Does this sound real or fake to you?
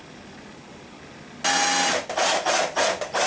real